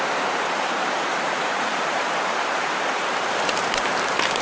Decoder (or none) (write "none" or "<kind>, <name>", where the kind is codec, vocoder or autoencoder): vocoder, BigVGAN v2